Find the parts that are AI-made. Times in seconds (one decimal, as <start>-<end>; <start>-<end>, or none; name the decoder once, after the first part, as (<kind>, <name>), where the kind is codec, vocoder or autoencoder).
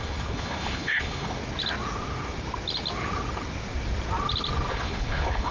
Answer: 0.0-1.4 (codec, HILCodec); 4.7-5.5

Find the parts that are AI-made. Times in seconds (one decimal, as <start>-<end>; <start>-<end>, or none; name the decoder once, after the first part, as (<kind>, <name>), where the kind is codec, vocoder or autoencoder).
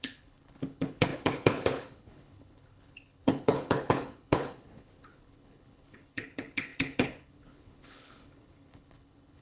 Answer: 0.0-9.4 (codec, HILCodec)